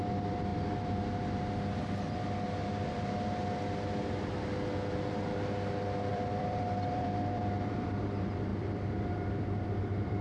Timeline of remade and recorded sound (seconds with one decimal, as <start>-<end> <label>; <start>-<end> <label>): 0.0-2.6 recorded; 2.6-3.4 remade; 3.4-6.1 recorded; 6.1-8.0 remade; 8.0-8.5 recorded; 8.5-10.2 remade